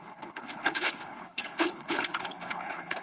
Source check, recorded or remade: remade